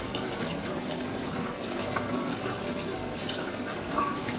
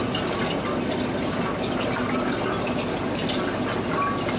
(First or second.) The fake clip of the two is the first